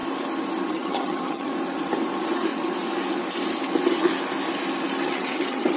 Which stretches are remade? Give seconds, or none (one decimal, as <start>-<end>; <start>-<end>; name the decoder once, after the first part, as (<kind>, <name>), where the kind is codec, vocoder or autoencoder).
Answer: 0.7-1.5 (vocoder, HiFi-GAN); 5.0-5.8